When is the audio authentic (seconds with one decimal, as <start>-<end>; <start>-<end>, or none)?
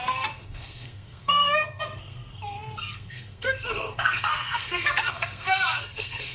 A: none